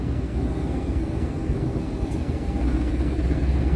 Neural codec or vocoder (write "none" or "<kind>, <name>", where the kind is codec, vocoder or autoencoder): codec, SNAC